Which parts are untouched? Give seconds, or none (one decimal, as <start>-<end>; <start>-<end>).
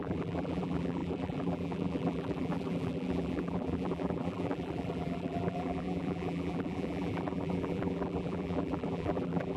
none